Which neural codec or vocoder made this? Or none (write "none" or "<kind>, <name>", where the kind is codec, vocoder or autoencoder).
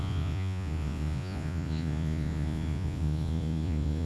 vocoder, Vocos